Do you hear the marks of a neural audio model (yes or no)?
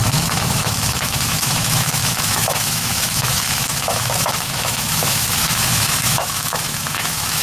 yes